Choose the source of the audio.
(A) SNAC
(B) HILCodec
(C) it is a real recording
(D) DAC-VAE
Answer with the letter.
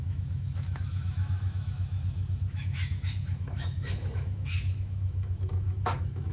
D